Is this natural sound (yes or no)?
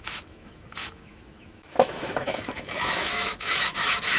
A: no